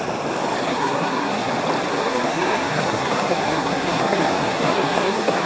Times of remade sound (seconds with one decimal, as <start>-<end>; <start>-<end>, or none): 0.7-1.5; 1.9-5.5